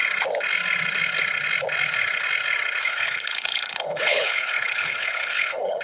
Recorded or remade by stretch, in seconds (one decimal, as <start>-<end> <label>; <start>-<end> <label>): 0.0-2.8 recorded; 2.8-5.8 remade